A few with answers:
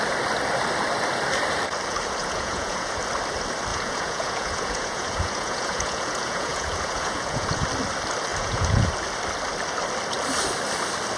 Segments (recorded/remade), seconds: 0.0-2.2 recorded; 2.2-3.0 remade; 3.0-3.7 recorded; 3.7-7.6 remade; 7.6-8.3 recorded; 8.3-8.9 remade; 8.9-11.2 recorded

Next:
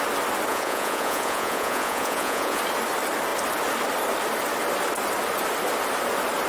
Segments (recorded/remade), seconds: 0.0-0.5 recorded; 0.5-2.6 remade; 2.6-6.5 recorded